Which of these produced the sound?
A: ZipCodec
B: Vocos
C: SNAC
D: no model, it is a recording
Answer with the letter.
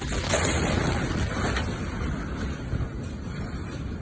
D